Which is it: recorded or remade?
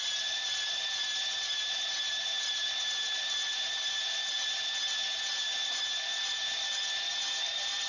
recorded